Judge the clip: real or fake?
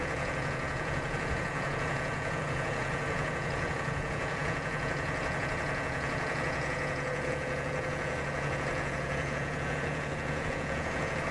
fake